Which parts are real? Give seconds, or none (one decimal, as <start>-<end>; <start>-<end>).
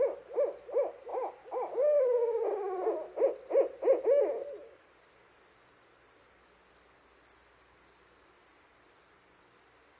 0.0-10.0